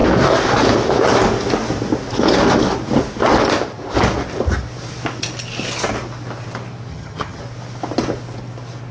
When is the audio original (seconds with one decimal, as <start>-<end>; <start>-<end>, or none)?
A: 0.0-6.9; 7.4-8.9